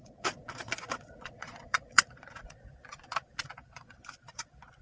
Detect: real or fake fake